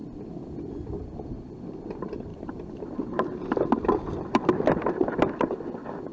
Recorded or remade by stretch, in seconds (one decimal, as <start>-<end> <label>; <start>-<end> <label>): 0.0-1.0 remade; 1.0-2.3 recorded; 2.3-6.1 remade